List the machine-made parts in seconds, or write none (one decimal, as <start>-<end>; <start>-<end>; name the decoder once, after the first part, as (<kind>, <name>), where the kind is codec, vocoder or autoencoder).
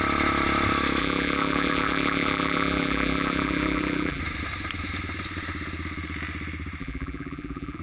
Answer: 1.0-4.2 (vocoder, BigVGAN v2); 6.8-7.8